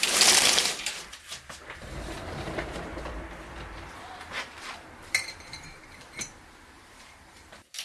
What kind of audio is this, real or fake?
fake